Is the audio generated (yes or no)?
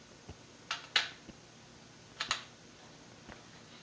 no